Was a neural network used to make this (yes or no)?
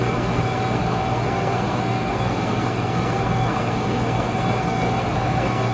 yes